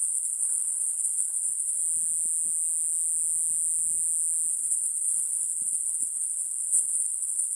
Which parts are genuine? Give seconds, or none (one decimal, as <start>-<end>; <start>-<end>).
1.8-4.5